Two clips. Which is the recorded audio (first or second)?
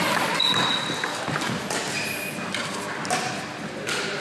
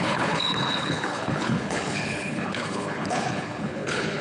first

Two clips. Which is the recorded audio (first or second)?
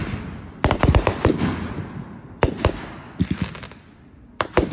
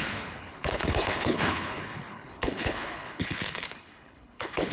first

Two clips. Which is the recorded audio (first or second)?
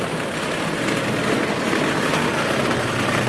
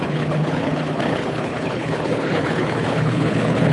first